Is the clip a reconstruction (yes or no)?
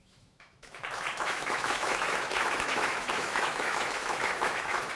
yes